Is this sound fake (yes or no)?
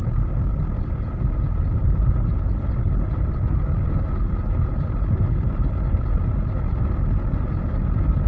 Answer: no